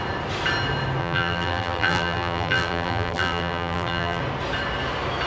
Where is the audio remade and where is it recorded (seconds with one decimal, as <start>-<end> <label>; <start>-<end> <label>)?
0.0-1.0 recorded; 1.0-4.2 remade; 4.2-5.3 recorded